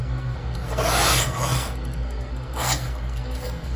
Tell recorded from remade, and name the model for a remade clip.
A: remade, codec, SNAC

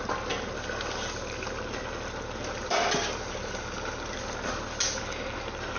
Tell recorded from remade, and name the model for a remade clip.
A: recorded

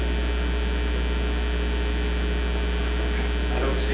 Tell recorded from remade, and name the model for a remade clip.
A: recorded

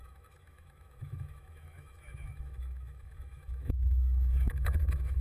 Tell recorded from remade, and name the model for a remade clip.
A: remade, autoencoder, DAC-VAE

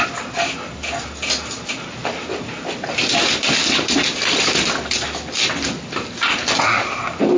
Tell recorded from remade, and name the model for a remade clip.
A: recorded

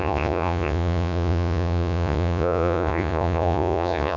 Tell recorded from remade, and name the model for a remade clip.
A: remade, vocoder, Vocos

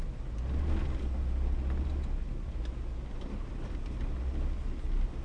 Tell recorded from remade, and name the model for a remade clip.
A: recorded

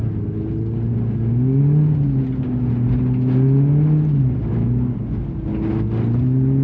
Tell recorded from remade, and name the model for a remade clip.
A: recorded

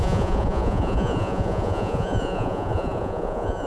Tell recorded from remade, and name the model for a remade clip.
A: remade, vocoder, Vocos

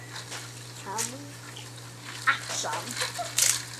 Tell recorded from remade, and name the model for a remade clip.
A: recorded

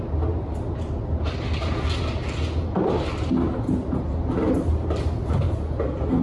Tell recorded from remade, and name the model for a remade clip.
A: recorded